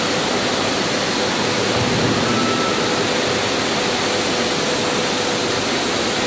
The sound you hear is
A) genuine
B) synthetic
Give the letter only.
A